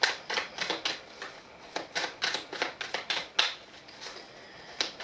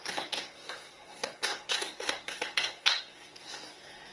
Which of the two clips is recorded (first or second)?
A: first